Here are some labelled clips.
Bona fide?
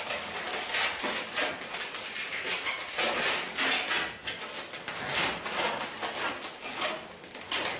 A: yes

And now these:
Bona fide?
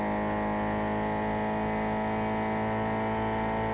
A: yes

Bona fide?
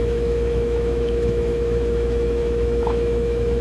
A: no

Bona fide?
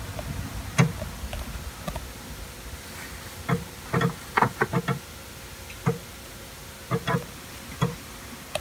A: yes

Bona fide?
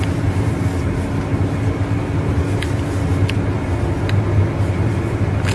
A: yes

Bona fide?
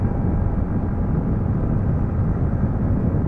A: yes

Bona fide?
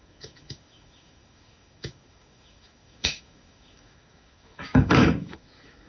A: no